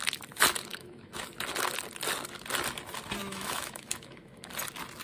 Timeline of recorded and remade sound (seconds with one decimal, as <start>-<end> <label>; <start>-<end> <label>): 0.0-0.7 recorded; 0.7-1.3 remade; 1.3-3.2 recorded; 3.2-4.4 remade; 4.4-5.0 recorded